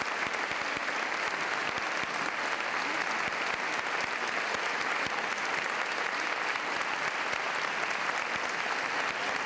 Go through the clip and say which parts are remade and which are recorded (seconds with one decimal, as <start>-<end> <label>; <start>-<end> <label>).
0.0-9.5 recorded

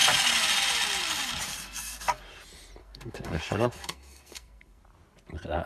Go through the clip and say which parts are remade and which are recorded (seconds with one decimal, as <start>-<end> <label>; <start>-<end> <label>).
0.0-1.5 recorded; 1.5-2.2 remade; 2.2-2.8 recorded; 2.8-4.8 remade; 4.8-5.7 recorded

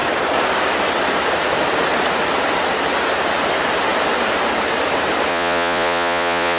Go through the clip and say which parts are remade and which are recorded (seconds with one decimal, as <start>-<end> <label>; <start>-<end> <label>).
0.0-5.3 recorded; 5.3-6.6 remade

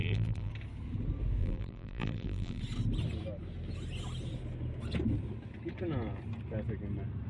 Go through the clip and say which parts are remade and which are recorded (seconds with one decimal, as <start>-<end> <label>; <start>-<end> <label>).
0.0-0.5 remade; 0.5-1.4 recorded; 1.4-2.6 remade; 2.6-7.3 recorded

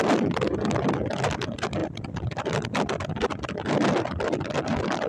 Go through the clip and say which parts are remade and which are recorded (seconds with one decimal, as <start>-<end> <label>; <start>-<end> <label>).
0.0-5.1 recorded

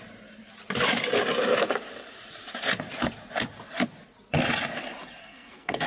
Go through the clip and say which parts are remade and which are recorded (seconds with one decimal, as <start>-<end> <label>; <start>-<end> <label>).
0.0-5.2 recorded; 5.2-5.9 remade

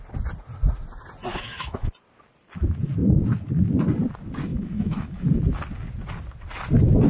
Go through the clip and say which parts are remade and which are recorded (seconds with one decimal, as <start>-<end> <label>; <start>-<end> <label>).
0.0-1.3 recorded; 1.3-1.9 remade; 1.9-4.5 recorded; 4.5-5.2 remade; 5.2-7.1 recorded

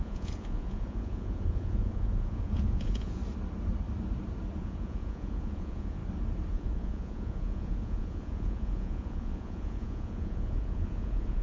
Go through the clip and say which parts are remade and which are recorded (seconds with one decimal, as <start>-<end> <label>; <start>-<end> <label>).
0.0-3.2 remade; 3.2-4.6 recorded; 4.6-6.0 remade; 6.0-6.5 recorded; 6.5-11.4 remade